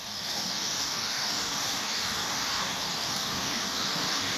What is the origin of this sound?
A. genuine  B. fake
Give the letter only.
B